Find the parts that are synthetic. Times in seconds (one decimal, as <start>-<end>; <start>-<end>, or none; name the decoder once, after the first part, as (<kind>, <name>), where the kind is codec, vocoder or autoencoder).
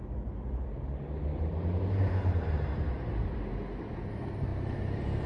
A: none